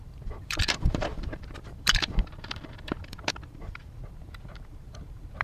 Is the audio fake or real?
fake